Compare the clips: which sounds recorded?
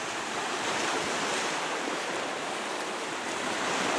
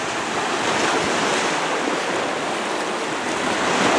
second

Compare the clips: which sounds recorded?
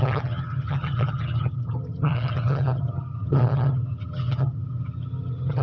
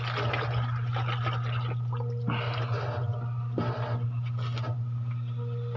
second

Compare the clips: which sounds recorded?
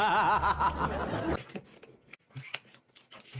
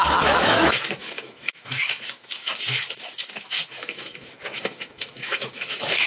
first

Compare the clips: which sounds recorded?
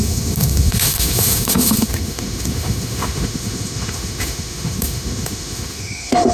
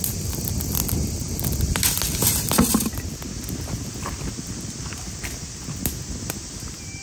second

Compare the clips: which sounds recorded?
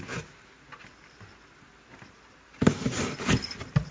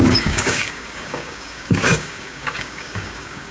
first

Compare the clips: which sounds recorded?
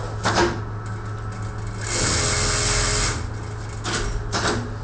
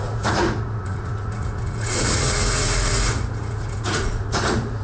first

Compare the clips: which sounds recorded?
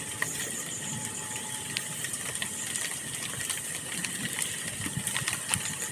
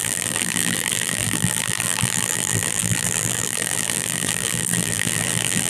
first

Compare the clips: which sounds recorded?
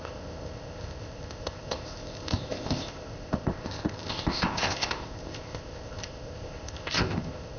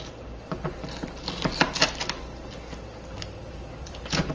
second